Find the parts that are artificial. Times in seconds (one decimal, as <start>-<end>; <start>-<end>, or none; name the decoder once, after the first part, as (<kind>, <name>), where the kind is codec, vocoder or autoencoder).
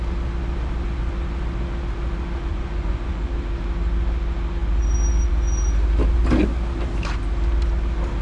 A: 2.5-3.3 (vocoder, Vocos)